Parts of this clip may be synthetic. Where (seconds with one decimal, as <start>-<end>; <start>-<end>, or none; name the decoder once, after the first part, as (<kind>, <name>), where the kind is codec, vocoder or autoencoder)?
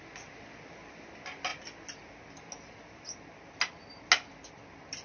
none